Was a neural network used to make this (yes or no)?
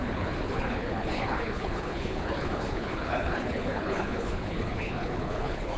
yes